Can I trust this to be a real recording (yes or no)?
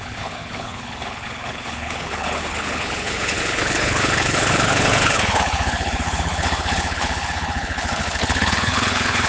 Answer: no